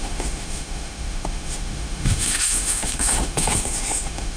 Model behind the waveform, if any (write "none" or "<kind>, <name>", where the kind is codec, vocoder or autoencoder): autoencoder, DAC-VAE